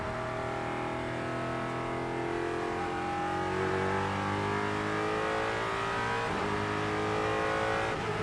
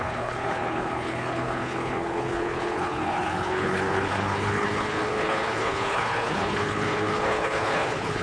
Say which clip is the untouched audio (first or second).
first